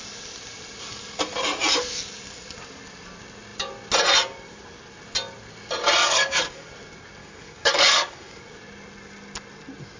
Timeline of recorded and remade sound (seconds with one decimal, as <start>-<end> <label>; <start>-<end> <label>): 0.0-6.0 recorded; 6.0-6.7 remade; 6.7-7.2 recorded; 7.2-8.4 remade; 8.4-10.0 recorded